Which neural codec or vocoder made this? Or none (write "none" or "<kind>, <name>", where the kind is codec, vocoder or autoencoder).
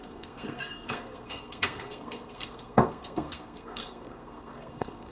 codec, SNAC